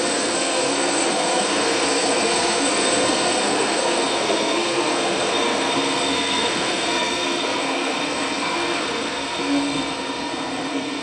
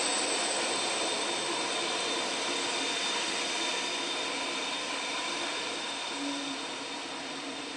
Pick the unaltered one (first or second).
second